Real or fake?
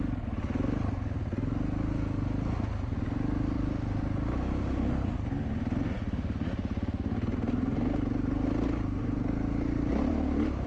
real